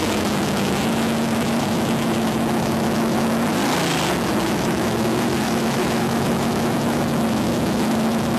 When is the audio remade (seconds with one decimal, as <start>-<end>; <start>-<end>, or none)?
0.0-3.6; 4.2-8.4